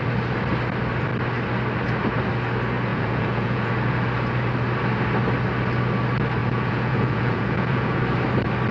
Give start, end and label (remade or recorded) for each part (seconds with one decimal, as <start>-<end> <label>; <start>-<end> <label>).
0.0-2.9 recorded; 2.9-3.7 remade; 3.7-6.4 recorded; 6.4-8.0 remade; 8.0-8.7 recorded